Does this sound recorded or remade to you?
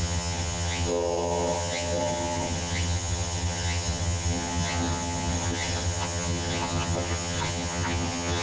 remade